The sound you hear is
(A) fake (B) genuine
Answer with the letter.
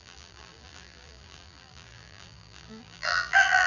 A